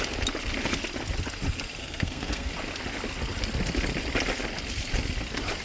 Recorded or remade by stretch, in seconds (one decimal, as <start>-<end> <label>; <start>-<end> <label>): 0.0-1.8 recorded; 1.8-2.5 remade; 2.5-5.6 recorded